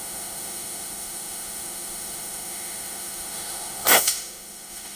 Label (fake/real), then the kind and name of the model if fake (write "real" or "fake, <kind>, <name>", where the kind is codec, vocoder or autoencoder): fake, autoencoder, DAC-VAE